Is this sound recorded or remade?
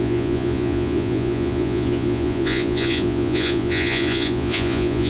remade